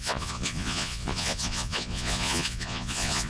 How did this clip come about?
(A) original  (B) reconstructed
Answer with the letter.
B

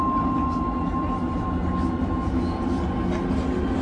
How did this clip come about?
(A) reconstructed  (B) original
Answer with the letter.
B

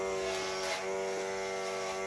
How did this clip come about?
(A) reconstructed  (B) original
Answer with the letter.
B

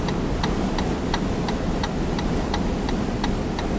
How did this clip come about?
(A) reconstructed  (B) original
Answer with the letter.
B